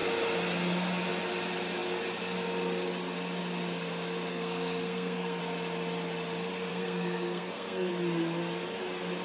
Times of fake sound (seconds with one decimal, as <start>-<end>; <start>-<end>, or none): 4.3-5.4; 6.7-7.9